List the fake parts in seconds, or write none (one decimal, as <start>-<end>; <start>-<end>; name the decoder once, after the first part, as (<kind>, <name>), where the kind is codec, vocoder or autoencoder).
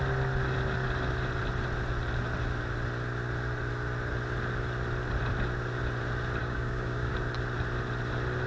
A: 6.4-7.1 (codec, DAC)